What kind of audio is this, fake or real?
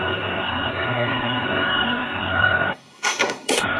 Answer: fake